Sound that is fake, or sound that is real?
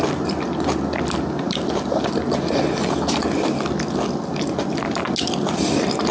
real